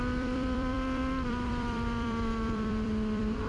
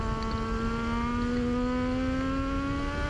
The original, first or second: second